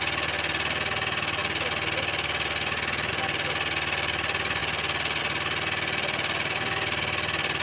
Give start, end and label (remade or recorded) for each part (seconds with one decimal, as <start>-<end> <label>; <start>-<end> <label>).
0.0-7.6 recorded